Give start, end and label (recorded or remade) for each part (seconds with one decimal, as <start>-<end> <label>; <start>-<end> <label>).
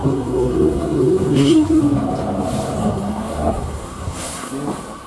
0.0-1.8 remade; 1.8-2.8 recorded; 2.8-4.5 remade; 4.5-5.1 recorded